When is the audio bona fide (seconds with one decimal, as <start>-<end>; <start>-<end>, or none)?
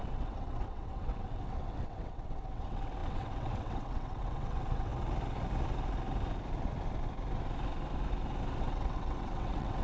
4.9-8.6